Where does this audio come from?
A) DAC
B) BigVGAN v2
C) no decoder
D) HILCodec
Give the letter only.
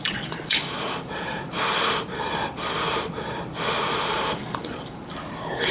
B